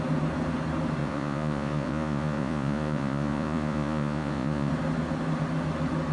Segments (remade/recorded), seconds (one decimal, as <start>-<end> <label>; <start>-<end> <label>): 0.0-1.0 recorded; 1.0-4.7 remade; 4.7-6.1 recorded